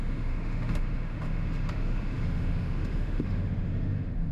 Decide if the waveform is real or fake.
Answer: fake